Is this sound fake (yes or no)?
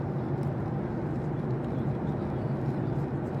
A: no